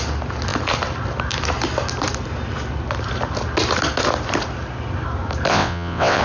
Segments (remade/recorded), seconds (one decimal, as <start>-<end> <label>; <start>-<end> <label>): 0.0-5.5 recorded; 5.5-6.2 remade